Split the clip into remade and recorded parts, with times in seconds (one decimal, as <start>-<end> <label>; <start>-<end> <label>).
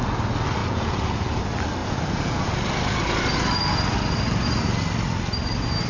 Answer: 0.0-0.6 recorded; 0.6-1.4 remade; 1.4-1.8 recorded; 1.8-2.5 remade; 2.5-5.9 recorded